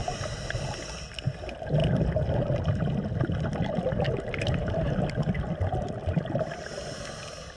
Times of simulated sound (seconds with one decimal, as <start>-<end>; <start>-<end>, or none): none